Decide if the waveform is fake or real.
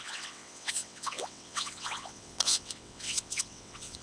fake